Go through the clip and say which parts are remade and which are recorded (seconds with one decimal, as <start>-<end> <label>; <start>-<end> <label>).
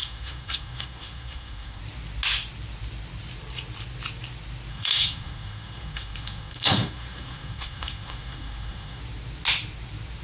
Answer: 0.0-1.8 remade; 1.8-4.7 recorded; 4.7-9.0 remade; 9.0-10.2 recorded